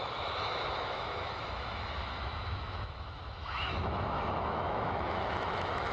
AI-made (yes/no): yes